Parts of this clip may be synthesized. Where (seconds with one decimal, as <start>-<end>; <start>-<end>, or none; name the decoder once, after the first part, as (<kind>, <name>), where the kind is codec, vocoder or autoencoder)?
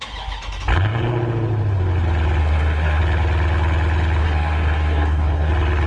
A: 2.4-3.0 (codec, SNAC); 4.2-5.5